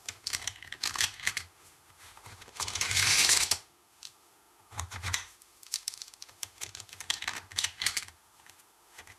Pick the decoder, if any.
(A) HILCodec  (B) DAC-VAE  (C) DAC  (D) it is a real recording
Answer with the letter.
B